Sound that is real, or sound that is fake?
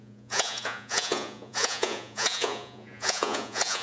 fake